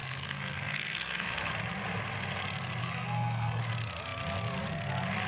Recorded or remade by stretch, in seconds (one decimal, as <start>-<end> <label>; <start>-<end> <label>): 0.0-1.4 remade; 1.4-2.8 recorded; 2.8-3.6 remade; 3.6-5.3 recorded